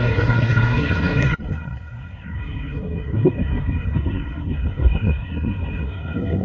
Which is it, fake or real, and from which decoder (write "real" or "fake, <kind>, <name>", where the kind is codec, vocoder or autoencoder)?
fake, codec, SNAC